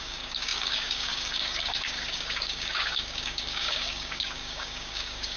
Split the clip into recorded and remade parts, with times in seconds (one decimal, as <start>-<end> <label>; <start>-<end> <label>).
0.0-5.4 remade